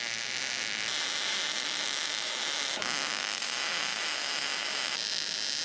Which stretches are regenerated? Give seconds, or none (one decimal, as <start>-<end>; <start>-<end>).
1.6-3.4